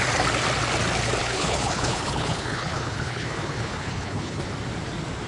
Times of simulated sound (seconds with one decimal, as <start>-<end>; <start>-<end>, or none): 1.2-4.4